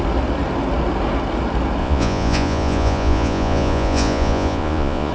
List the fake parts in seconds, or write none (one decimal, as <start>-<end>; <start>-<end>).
1.8-5.1